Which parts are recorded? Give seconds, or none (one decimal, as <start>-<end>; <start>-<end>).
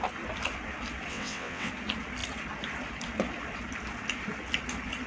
0.0-1.1; 1.7-5.1